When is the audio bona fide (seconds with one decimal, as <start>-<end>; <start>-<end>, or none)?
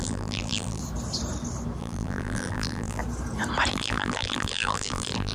0.8-1.8; 3.0-3.7